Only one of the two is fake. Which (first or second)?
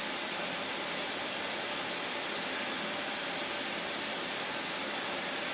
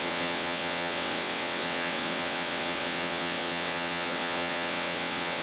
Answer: second